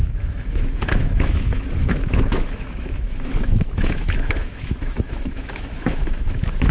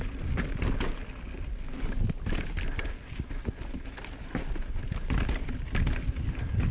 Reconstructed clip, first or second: first